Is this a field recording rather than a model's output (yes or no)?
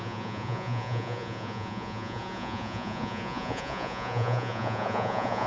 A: no